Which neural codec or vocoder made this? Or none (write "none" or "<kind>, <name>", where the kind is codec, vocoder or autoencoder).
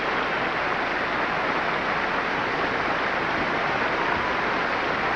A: none